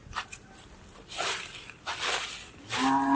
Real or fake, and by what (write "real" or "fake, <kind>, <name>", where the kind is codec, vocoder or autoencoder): real